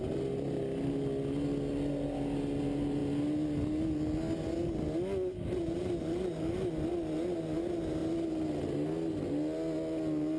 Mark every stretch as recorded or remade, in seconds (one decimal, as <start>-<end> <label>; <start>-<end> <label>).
0.0-10.4 recorded